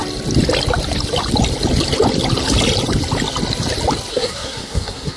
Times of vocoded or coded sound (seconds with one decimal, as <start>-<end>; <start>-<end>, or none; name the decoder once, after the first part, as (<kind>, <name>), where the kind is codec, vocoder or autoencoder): 4.1-5.2 (codec, SNAC)